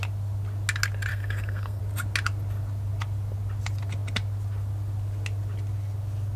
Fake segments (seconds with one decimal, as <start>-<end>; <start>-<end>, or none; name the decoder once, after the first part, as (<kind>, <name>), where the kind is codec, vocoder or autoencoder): 1.1-1.8 (codec, SNAC)